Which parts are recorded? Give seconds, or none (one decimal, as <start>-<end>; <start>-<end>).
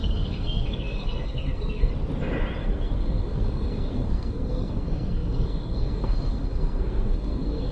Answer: 1.9-2.6